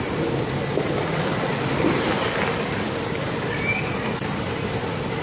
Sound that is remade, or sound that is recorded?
recorded